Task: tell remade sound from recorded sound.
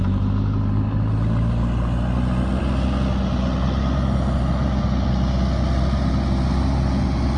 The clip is recorded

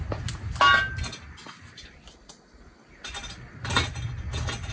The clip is recorded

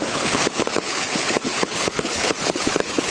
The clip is remade